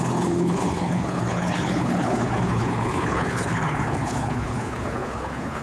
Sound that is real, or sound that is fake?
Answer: fake